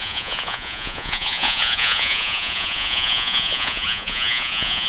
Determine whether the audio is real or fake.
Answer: fake